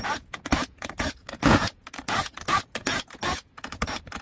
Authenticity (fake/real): fake